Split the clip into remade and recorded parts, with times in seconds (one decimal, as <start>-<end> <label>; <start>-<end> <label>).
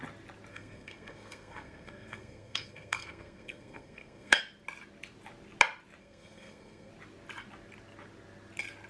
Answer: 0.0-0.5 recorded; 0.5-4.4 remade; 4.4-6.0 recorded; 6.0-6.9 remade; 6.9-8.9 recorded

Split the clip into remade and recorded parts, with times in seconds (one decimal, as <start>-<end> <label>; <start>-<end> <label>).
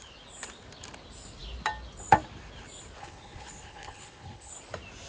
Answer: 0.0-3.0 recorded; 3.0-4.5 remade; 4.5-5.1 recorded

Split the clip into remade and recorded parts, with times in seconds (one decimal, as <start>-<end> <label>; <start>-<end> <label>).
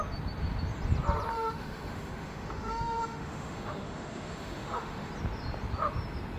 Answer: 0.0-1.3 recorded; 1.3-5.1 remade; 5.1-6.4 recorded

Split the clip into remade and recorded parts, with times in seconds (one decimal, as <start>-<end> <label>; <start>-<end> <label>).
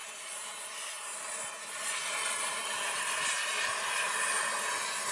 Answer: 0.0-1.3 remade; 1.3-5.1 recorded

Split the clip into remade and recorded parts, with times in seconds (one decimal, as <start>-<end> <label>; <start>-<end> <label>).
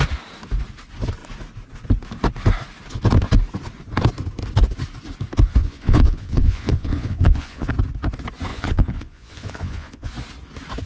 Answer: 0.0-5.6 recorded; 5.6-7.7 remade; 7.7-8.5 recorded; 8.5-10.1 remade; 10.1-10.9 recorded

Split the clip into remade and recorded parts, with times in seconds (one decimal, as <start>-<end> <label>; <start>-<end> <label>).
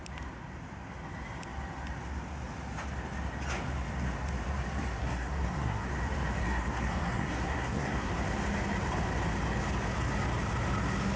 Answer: 0.0-5.0 recorded; 5.0-5.9 remade; 5.9-6.4 recorded; 6.4-8.1 remade; 8.1-11.2 recorded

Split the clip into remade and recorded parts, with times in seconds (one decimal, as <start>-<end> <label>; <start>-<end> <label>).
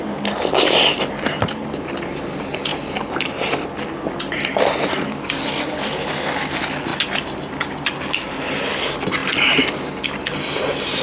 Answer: 0.0-11.0 recorded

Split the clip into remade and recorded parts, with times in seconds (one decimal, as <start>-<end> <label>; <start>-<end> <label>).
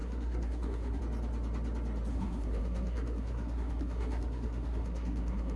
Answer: 0.0-1.0 remade; 1.0-2.1 recorded; 2.1-5.6 remade